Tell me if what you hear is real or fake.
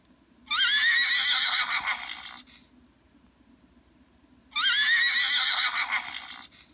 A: real